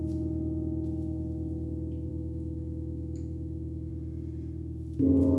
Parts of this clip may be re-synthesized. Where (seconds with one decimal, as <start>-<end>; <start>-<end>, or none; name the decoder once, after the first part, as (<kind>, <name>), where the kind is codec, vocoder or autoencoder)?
2.1-3.9 (autoencoder, DAC-VAE)